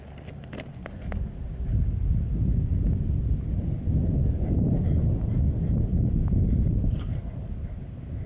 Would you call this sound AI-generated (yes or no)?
no